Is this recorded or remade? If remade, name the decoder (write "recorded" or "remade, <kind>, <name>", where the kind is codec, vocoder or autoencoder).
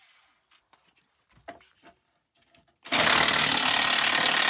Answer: recorded